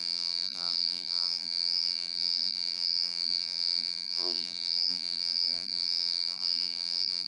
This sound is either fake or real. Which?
fake